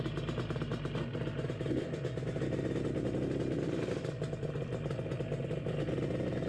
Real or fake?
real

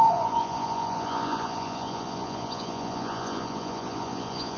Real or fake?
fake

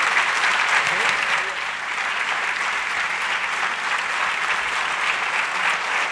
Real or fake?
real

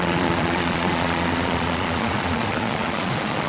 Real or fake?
fake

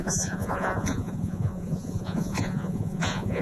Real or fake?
fake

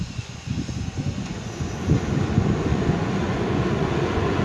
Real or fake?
fake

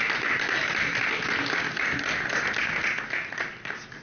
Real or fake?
real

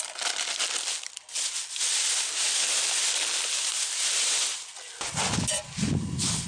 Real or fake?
real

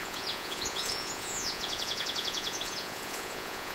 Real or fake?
fake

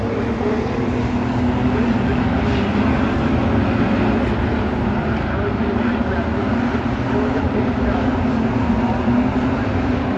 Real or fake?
real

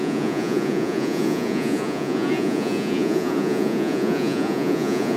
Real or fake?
fake